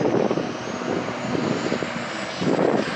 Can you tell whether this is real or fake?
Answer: real